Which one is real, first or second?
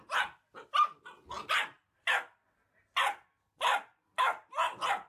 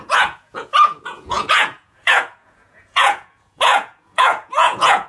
first